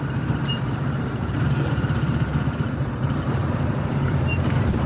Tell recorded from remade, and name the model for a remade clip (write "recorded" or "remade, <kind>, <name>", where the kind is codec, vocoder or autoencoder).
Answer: remade, vocoder, BigVGAN v2